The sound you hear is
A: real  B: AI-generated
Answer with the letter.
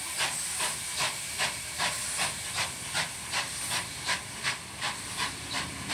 A